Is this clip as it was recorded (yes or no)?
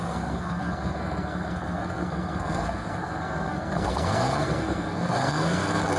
no